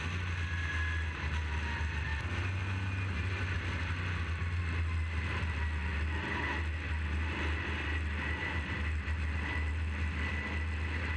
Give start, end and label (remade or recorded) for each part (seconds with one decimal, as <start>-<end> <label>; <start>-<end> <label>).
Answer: 0.0-11.2 recorded